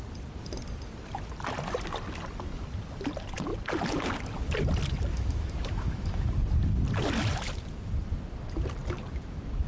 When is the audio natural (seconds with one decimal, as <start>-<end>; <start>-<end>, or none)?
0.0-5.1; 6.3-9.7